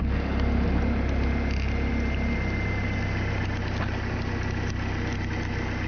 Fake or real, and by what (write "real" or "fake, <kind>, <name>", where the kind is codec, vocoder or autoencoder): real